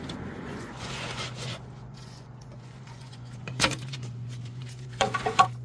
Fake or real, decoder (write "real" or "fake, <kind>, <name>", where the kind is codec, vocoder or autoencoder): fake, vocoder, Vocos